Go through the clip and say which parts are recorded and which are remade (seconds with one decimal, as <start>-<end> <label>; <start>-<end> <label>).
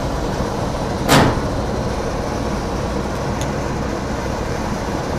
0.0-1.1 remade; 1.1-4.2 recorded; 4.2-5.2 remade